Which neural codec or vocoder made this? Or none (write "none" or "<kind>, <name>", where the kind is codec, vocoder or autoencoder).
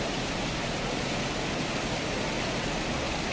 none